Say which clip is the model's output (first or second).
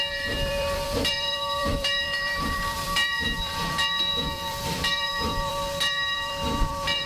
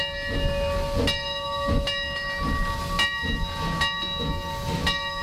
first